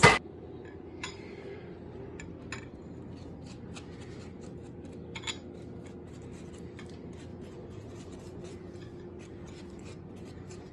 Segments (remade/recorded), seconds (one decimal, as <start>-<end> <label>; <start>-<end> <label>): 0.0-7.3 recorded; 7.3-10.7 remade